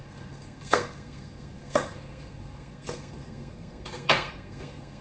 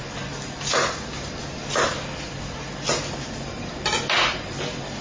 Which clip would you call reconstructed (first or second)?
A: first